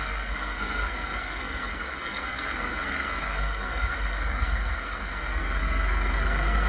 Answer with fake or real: fake